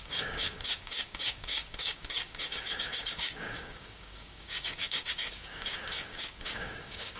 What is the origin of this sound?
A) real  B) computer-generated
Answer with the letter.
B